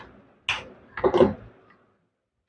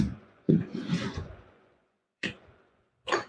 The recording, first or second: first